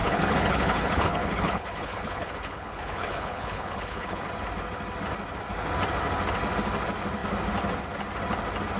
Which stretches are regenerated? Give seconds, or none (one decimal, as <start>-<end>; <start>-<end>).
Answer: 0.0-4.2